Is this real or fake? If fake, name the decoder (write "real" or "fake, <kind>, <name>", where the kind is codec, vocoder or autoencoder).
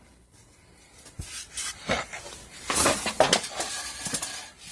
real